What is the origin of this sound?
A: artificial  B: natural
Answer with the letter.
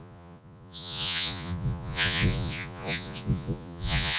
A